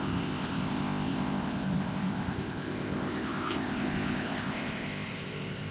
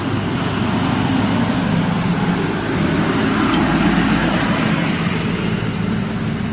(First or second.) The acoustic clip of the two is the second